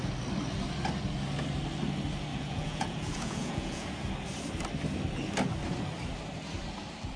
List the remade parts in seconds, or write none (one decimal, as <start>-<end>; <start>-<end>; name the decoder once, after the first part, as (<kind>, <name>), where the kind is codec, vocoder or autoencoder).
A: 2.3-3.9 (vocoder, Vocos)